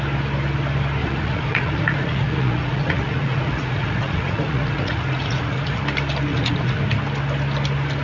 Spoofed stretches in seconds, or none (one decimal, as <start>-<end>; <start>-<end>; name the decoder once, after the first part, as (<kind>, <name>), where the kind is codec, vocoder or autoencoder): 1.0-5.8 (vocoder, Vocos); 6.3-6.8

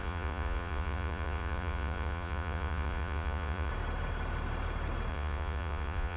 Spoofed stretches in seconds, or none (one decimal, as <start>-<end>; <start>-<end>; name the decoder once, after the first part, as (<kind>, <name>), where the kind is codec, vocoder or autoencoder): 0.0-3.7 (vocoder, Vocos); 5.1-6.2

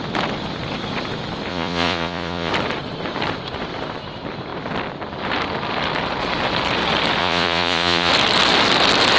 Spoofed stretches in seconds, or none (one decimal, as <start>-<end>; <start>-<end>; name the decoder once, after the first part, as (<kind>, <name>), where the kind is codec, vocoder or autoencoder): 1.5-2.5 (vocoder, Vocos); 7.2-8.1

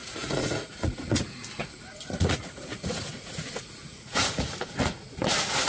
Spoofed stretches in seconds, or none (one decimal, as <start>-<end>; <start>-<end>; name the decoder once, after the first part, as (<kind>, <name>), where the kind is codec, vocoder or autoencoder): 0.0-1.2 (vocoder, Vocos); 1.6-5.0

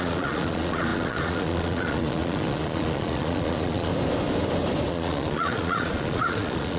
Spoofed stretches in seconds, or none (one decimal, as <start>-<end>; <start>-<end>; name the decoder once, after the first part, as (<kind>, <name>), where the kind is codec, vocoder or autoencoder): 0.0-3.9 (vocoder, Vocos); 4.9-6.8

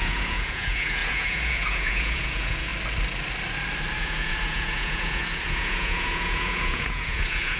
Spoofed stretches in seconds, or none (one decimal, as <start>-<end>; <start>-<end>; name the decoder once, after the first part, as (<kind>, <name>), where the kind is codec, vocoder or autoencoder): 0.0-2.7 (vocoder, Vocos); 4.0-7.6

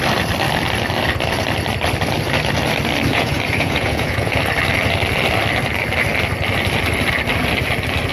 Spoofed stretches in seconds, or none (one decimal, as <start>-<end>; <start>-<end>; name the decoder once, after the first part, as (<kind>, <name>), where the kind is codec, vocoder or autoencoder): 3.1-4.4 (vocoder, Vocos)